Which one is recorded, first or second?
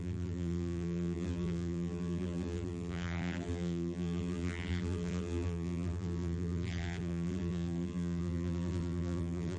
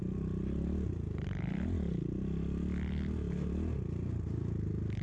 second